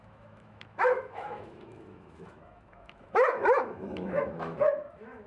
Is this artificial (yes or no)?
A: yes